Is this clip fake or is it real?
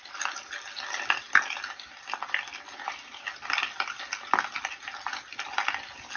real